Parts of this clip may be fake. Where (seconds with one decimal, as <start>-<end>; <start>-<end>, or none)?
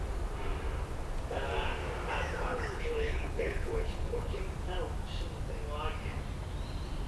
2.5-4.4